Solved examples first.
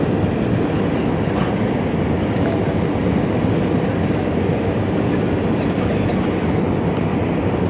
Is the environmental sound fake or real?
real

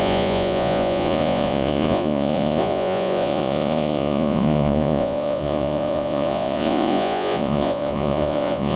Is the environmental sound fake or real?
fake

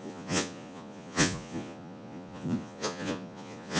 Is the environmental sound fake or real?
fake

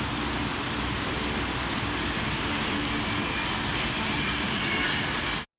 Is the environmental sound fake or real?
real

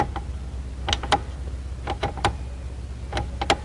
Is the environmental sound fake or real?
real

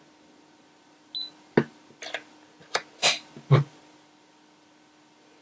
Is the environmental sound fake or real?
real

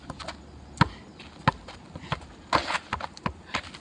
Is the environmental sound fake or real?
real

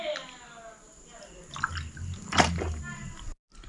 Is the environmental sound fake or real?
real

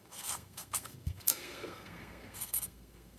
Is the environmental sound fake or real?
fake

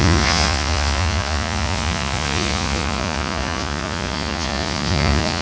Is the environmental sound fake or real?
fake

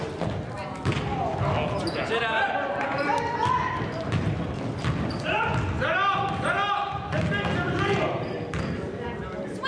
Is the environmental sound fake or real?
real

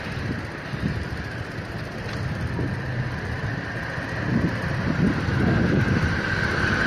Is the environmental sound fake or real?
real